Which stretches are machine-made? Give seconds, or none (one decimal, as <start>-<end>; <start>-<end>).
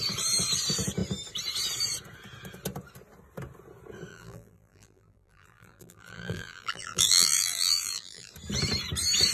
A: 4.1-8.3